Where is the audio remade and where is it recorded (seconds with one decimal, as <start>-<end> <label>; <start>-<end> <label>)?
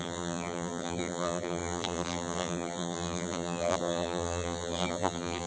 0.0-5.5 remade